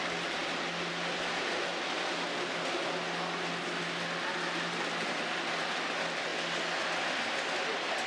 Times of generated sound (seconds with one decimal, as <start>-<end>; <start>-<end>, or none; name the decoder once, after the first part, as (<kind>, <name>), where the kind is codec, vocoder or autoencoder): none